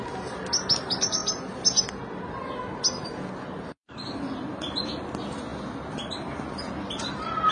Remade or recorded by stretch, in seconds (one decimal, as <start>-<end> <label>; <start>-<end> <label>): 0.0-7.5 recorded